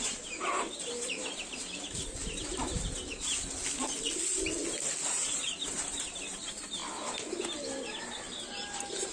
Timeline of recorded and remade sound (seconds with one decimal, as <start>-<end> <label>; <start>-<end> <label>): 0.0-1.2 remade; 1.2-5.1 recorded; 5.1-6.8 remade; 6.8-8.0 recorded; 8.0-9.1 remade